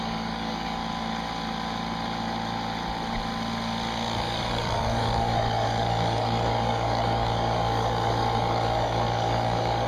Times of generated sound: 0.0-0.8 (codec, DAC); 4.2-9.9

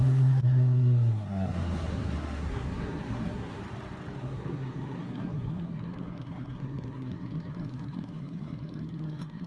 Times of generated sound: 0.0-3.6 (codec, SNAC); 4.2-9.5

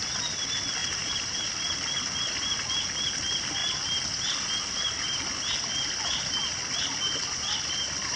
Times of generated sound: 0.8-1.4 (vocoder, BigVGAN v2)